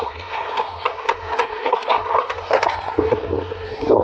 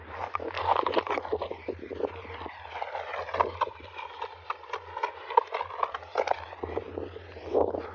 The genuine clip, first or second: second